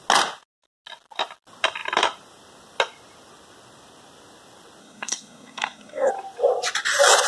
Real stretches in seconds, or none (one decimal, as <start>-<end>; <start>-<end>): 0.0-4.8; 6.1-7.3